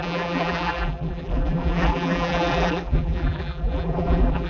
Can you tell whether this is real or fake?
fake